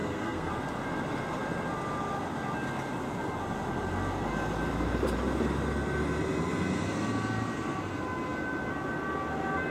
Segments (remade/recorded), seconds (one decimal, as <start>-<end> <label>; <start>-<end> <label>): 0.0-0.5 remade; 0.5-9.7 recorded